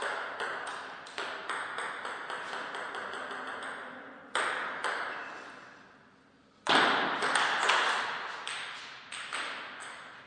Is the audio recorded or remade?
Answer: recorded